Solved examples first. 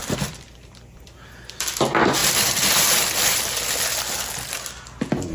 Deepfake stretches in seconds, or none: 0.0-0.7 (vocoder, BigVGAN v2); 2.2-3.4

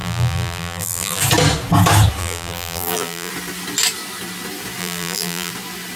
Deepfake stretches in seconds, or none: 0.0-1.2 (vocoder, BigVGAN v2); 2.2-3.3; 4.8-5.5

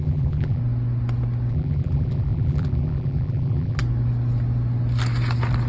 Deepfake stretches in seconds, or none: 0.0-0.6 (vocoder, BigVGAN v2); 1.5-3.8

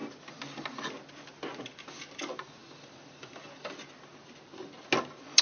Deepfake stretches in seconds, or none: 2.6-3.7 (vocoder, BigVGAN v2)

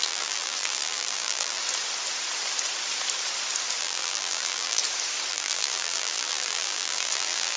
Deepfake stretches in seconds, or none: 0.0-1.6 (vocoder, BigVGAN v2); 3.8-4.8; 5.3-7.6